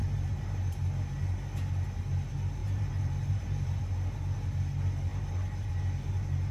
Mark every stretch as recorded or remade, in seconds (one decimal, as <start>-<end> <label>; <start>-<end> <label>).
0.0-0.8 remade; 0.8-2.6 recorded; 2.6-3.8 remade; 3.8-5.1 recorded; 5.1-5.7 remade; 5.7-6.5 recorded